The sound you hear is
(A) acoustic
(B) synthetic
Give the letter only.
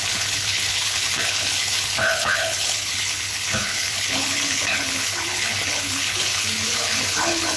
B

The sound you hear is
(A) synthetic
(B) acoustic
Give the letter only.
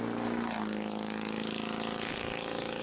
B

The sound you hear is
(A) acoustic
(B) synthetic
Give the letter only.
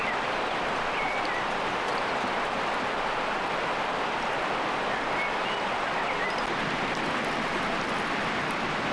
A